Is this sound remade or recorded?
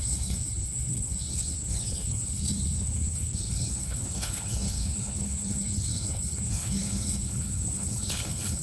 remade